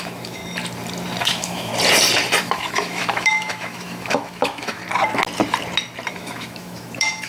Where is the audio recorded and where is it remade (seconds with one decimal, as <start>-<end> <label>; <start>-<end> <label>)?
0.0-0.4 remade; 0.4-1.2 recorded; 1.2-1.7 remade; 1.7-2.4 recorded; 2.4-4.8 remade; 4.8-6.1 recorded; 6.1-7.3 remade